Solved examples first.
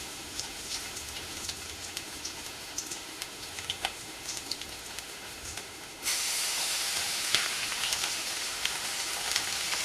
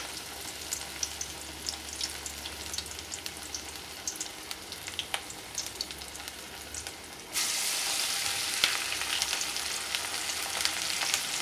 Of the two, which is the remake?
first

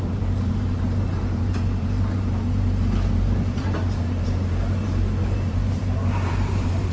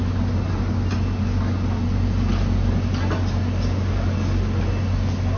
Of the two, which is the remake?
first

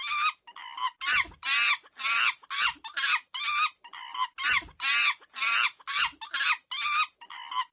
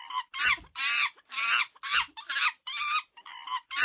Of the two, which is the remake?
second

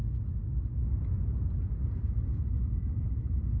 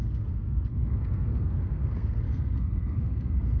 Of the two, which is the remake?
second